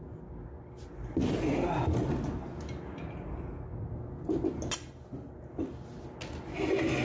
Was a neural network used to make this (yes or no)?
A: no